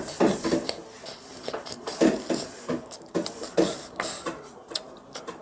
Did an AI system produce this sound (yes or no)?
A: no